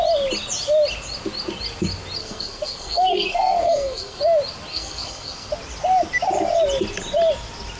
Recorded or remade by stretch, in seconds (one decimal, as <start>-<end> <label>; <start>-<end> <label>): 0.0-2.2 recorded; 2.2-4.2 remade; 4.2-4.7 recorded; 4.7-5.5 remade; 5.5-7.8 recorded